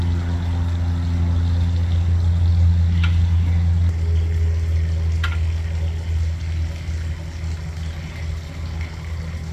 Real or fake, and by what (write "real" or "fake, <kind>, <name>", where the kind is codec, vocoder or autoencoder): real